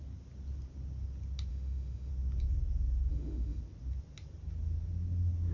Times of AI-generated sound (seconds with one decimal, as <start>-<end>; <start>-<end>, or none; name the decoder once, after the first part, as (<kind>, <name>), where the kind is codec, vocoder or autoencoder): 1.5-2.1 (autoencoder, DAC-VAE); 3.1-3.6

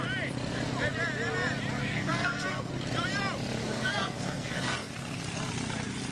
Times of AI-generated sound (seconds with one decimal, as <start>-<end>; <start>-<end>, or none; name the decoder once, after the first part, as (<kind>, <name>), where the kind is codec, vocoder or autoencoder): 1.8-2.7 (codec, SNAC); 3.6-4.9